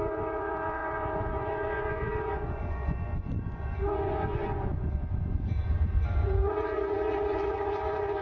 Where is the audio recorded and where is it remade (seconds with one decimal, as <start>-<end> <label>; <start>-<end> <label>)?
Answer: 0.0-8.2 remade